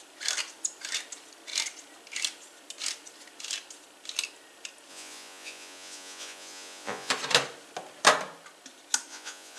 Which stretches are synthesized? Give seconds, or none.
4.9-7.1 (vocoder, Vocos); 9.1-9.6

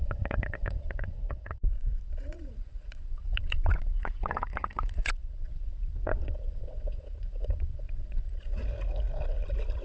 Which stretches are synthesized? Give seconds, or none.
0.0-8.6 (vocoder, Vocos)

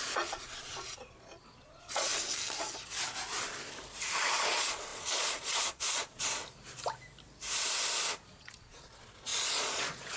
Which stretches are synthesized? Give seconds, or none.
0.0-2.1 (vocoder, Vocos); 4.3-6.4; 8.3-10.2

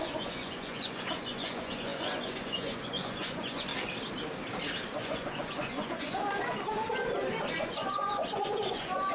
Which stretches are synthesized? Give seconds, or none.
0.0-3.7 (vocoder, Vocos); 5.0-6.2; 7.6-9.1

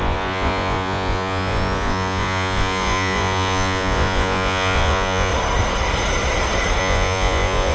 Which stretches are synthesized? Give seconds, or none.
0.0-5.3 (vocoder, Vocos); 6.8-7.7

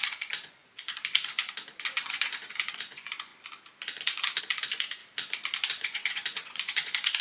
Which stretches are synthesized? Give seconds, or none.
0.0-3.3 (vocoder, Vocos); 4.4-5.0; 5.7-7.2

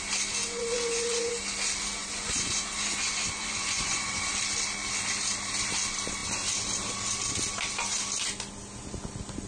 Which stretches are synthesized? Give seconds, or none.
0.4-1.3 (vocoder, Vocos); 2.0-4.3

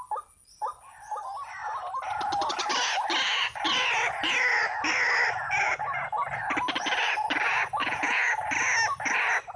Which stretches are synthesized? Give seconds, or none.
7.8-8.3 (vocoder, Vocos)